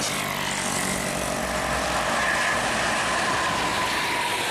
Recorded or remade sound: recorded